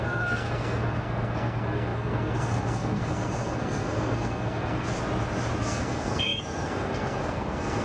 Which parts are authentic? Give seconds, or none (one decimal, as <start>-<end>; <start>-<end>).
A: 4.9-5.6